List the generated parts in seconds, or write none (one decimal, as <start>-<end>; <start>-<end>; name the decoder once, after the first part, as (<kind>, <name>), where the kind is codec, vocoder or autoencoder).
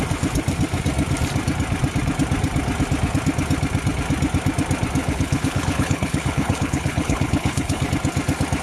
5.0-7.9 (codec, HILCodec)